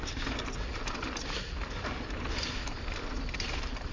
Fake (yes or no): no